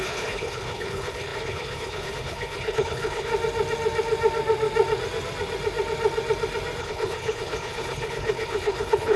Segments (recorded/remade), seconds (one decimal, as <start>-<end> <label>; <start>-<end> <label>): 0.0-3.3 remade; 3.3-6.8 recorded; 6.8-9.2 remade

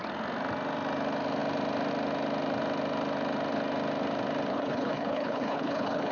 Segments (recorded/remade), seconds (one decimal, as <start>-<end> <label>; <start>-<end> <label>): 0.0-4.5 recorded; 4.5-6.1 remade

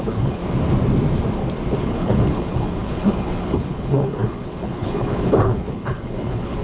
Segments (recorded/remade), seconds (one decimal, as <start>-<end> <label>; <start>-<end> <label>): 0.0-0.4 remade; 0.4-1.8 recorded; 1.8-6.6 remade

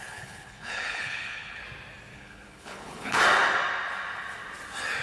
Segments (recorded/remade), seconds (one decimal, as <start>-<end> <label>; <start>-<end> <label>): 0.0-1.6 remade; 1.6-2.1 recorded; 2.1-3.2 remade; 3.2-5.0 recorded

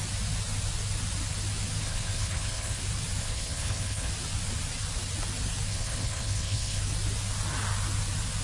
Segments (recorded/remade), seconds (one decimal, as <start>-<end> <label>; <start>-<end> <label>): 0.0-1.8 recorded; 1.8-2.8 remade; 2.8-3.2 recorded; 3.2-4.1 remade; 4.1-5.7 recorded; 5.7-6.8 remade; 6.8-8.4 recorded

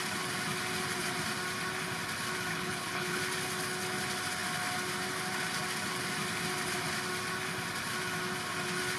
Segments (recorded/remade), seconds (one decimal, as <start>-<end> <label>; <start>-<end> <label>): 0.0-2.5 recorded; 2.5-3.2 remade; 3.2-9.0 recorded

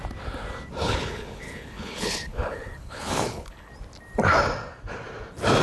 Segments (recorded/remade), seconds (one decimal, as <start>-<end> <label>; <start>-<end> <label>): 0.0-0.8 recorded; 0.8-3.7 remade; 3.7-5.6 recorded